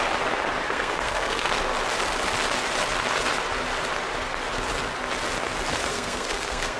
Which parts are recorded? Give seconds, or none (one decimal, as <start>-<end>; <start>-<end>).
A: 0.0-0.6; 1.5-5.9